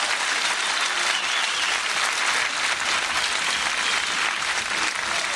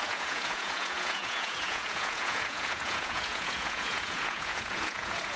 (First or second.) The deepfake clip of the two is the second